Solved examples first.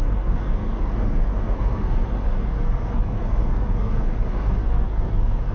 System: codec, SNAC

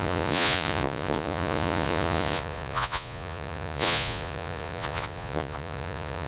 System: vocoder, Vocos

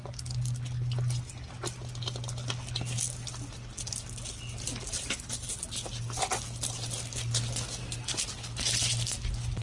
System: none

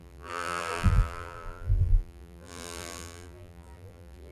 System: vocoder, BigVGAN v2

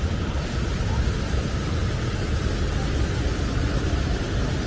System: none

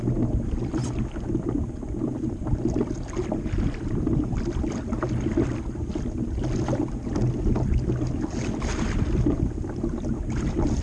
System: none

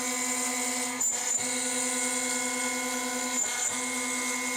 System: none